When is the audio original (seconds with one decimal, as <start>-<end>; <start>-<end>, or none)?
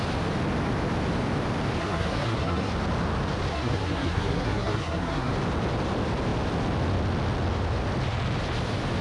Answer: 0.0-1.8; 2.7-3.5; 5.3-9.0